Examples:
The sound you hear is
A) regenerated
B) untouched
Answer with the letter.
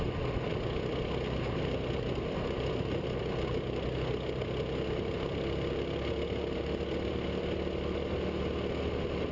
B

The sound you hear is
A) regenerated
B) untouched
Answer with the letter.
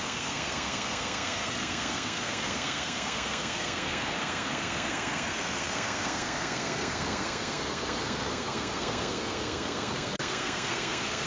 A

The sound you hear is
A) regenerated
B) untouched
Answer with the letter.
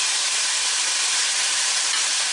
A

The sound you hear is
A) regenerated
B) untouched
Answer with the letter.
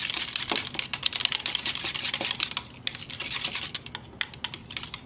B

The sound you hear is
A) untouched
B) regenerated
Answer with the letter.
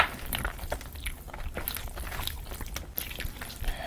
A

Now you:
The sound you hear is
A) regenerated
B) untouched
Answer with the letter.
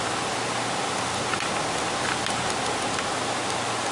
B